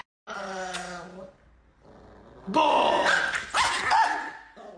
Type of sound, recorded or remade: recorded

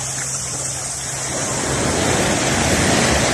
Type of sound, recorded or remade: recorded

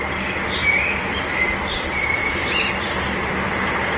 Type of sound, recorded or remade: recorded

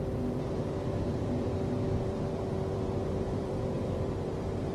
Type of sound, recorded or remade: remade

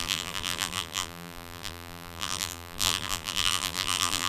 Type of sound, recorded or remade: remade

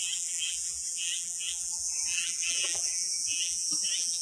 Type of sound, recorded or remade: remade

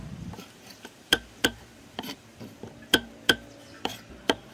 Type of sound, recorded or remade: remade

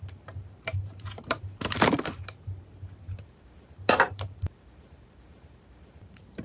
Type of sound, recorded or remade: remade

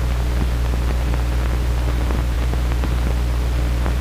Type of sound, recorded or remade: recorded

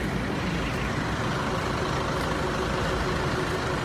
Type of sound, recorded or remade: recorded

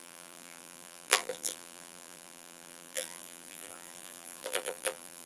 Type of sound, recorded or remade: remade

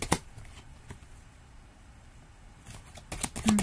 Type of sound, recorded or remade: recorded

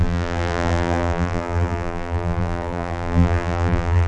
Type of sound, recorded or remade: remade